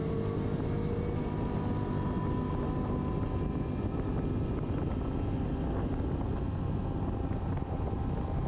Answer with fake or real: real